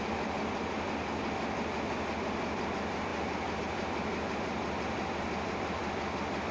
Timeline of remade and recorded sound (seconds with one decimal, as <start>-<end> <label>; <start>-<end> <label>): 0.0-6.5 recorded